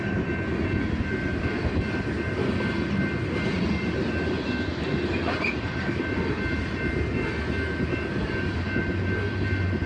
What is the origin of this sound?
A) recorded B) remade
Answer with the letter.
A